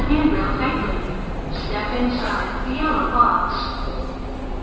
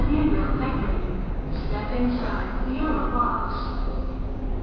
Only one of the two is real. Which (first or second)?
first